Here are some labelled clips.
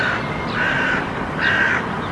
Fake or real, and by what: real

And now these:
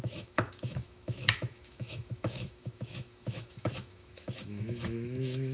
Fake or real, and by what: fake, autoencoder, DAC-VAE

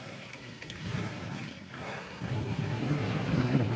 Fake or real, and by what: fake, codec, SNAC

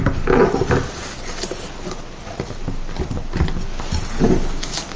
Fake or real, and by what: real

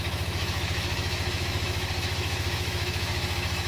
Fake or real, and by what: fake, autoencoder, DAC-VAE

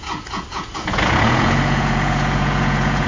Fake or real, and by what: fake, vocoder, Vocos